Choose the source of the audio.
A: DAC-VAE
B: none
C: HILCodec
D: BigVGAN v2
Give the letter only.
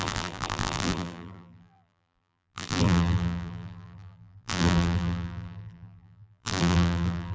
D